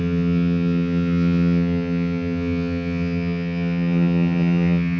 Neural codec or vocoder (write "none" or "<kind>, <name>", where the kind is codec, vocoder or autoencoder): vocoder, HiFi-GAN